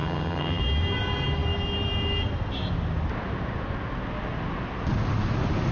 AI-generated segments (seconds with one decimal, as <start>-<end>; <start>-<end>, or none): 0.0-0.6